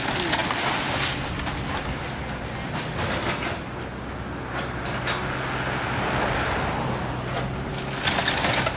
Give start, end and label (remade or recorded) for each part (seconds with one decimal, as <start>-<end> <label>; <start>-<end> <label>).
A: 0.0-8.8 recorded